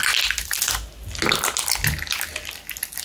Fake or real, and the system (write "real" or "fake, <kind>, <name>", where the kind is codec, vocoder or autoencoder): real